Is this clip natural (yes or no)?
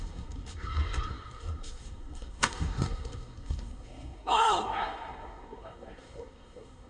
no